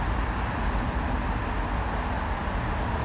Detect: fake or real real